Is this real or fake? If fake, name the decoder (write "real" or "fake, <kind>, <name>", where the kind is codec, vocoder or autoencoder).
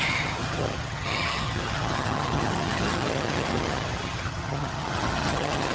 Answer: fake, vocoder, HiFi-GAN